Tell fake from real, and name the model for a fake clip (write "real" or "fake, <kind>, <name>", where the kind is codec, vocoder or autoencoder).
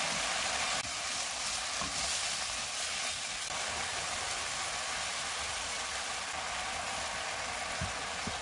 real